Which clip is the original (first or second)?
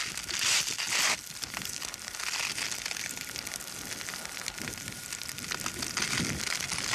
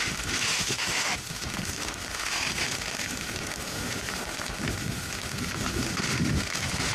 first